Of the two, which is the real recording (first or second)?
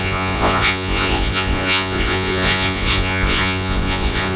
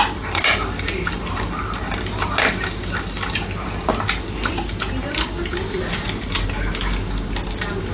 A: second